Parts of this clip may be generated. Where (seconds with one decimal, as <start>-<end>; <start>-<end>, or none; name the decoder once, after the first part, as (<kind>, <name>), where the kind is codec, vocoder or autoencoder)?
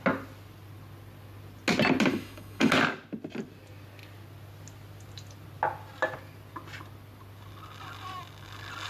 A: 2.1-2.7 (autoencoder, DAC-VAE)